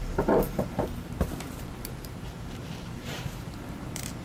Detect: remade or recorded remade